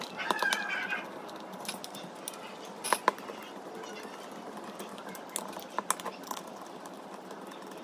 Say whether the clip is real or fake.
real